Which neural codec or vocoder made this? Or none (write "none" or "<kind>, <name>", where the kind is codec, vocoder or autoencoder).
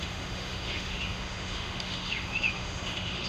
autoencoder, DAC-VAE